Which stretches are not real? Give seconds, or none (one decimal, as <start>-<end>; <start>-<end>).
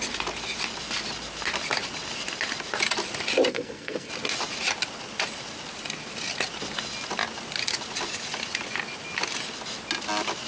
3.5-4.1